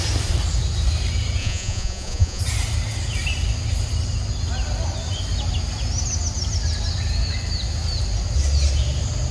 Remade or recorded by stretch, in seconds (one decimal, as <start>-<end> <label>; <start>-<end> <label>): 0.0-1.4 recorded; 1.4-2.4 remade; 2.4-9.3 recorded